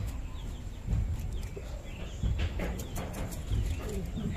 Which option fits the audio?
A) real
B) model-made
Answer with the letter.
A